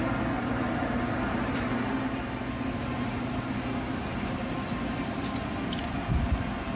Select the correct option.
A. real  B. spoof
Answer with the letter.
A